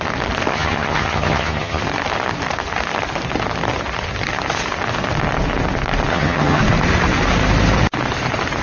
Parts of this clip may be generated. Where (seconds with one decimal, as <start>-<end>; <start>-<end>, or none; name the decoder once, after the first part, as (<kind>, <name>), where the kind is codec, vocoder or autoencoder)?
0.5-1.8 (vocoder, HiFi-GAN); 6.1-6.6